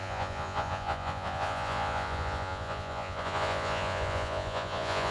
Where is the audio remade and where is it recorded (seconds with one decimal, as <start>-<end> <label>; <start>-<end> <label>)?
0.0-5.1 remade